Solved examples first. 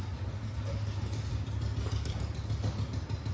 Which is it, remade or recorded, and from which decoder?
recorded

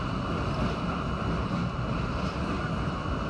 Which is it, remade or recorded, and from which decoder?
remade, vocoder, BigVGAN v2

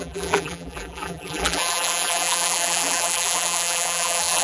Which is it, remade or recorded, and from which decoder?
remade, vocoder, BigVGAN v2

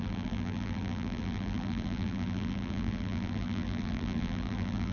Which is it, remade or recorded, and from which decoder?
remade, vocoder, BigVGAN v2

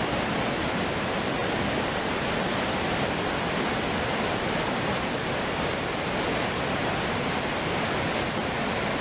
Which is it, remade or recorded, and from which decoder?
recorded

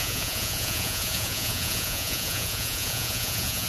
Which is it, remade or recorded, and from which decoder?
remade, vocoder, Vocos